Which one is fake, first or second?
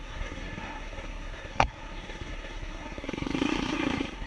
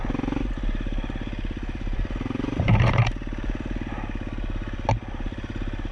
first